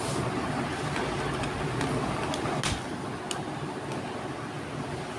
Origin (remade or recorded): recorded